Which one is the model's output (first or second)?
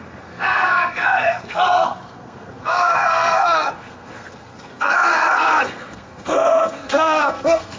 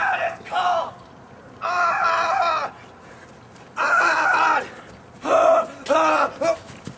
first